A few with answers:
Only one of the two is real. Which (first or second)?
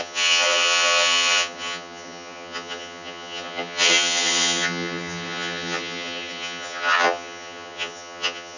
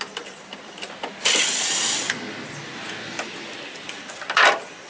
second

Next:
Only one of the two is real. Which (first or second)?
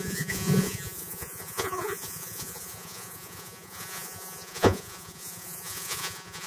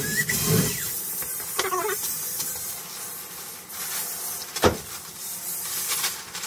second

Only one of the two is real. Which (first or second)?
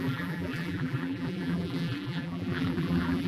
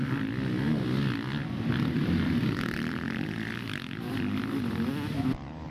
second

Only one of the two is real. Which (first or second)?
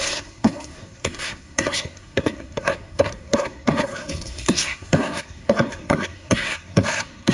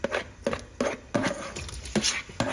second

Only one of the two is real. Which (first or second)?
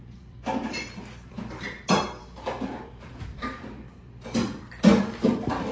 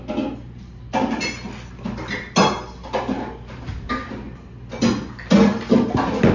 second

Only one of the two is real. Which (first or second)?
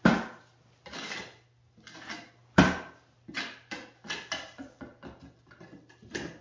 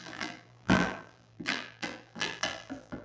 first